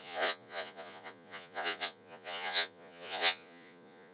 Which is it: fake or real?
fake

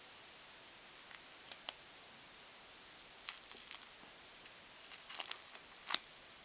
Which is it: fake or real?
real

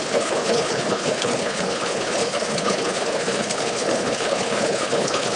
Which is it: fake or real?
fake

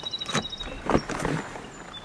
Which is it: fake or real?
real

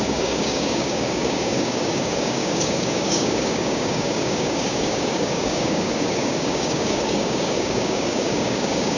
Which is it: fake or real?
fake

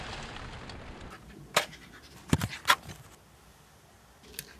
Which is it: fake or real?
real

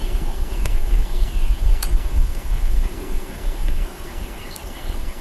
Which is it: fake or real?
fake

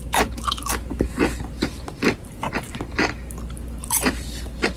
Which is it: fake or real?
real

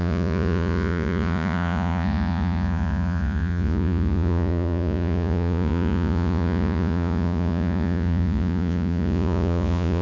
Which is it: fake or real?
fake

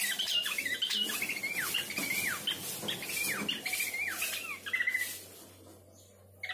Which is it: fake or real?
real